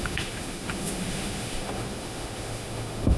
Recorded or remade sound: remade